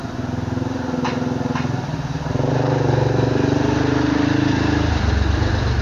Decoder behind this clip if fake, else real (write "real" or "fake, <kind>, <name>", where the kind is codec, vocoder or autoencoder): real